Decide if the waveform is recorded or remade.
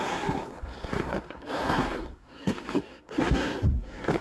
remade